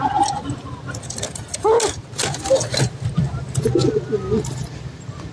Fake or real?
real